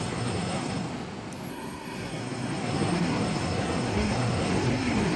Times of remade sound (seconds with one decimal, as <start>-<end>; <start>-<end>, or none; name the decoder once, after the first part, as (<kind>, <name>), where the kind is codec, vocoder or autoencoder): 0.0-0.9 (codec, SNAC); 1.5-5.2